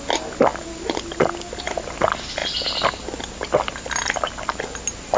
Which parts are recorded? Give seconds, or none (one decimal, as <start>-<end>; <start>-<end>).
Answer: 0.0-5.2